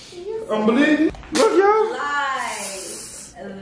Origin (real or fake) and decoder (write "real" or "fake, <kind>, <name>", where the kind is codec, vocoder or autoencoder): real